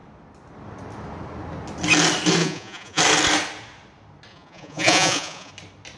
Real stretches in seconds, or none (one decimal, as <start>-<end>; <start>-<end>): 0.0-2.4; 3.0-4.3; 5.5-6.0